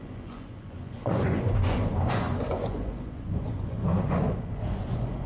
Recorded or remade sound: remade